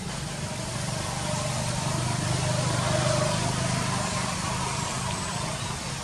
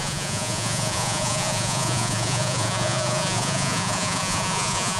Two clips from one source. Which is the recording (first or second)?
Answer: first